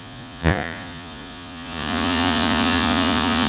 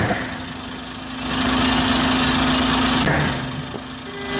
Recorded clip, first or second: second